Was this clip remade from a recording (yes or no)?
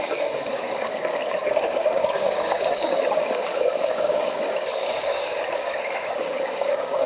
yes